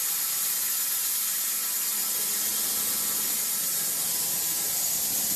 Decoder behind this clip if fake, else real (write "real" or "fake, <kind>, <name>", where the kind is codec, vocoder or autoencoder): real